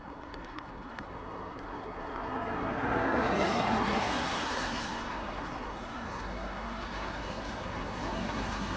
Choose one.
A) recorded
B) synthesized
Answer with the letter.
B